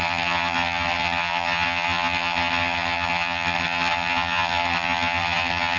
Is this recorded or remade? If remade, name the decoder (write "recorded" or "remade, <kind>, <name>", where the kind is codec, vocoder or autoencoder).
remade, vocoder, HiFi-GAN